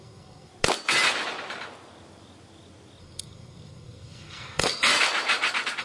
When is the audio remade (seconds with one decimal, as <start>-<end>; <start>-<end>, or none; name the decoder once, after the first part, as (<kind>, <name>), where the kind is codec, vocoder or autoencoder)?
0.0-0.5 (codec, SNAC); 3.0-4.9